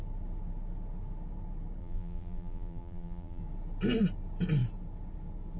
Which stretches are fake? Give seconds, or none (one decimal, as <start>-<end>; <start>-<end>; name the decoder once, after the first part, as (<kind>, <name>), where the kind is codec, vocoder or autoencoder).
1.8-3.4 (vocoder, BigVGAN v2)